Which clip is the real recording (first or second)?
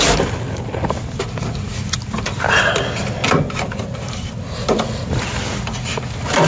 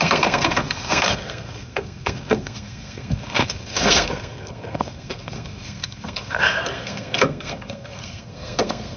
first